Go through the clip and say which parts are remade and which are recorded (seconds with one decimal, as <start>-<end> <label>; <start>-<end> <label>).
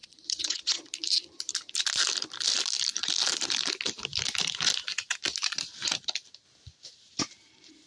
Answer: 0.0-0.8 remade; 0.8-7.9 recorded